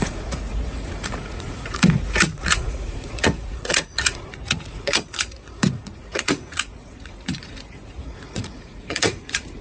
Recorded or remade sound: remade